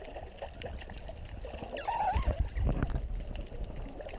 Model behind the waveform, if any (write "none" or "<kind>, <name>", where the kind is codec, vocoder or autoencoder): none